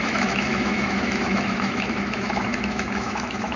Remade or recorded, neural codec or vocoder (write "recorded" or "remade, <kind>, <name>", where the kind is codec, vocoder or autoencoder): remade, autoencoder, DAC-VAE